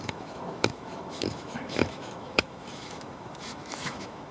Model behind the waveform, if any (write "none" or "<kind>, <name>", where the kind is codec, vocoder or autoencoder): autoencoder, DAC-VAE